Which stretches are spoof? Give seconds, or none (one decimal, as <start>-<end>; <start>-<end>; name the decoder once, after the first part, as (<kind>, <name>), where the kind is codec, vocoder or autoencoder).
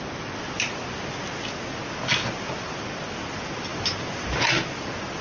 none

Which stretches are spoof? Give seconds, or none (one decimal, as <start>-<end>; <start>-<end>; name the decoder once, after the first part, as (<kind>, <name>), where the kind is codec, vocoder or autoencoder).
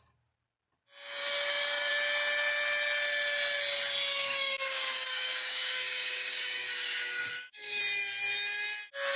1.2-1.9 (codec, DAC); 4.1-7.8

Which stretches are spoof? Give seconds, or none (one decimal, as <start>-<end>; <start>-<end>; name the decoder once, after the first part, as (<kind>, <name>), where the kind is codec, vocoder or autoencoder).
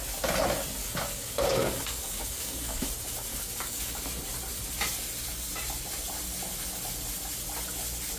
0.8-2.9 (codec, DAC); 3.3-4.0